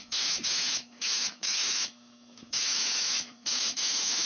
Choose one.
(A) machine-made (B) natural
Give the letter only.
A